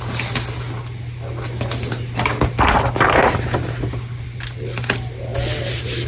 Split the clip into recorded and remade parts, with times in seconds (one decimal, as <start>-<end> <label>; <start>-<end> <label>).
0.0-6.1 recorded